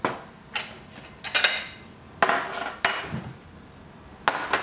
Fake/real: real